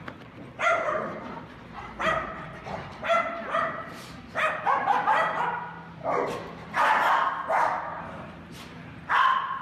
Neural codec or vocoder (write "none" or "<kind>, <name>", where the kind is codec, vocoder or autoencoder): none